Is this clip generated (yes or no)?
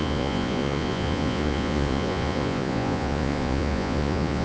yes